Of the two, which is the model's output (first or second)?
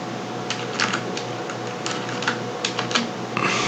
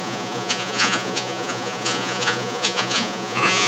second